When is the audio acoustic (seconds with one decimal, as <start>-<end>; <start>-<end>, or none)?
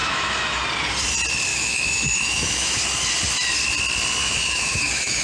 0.6-1.5; 2.8-4.2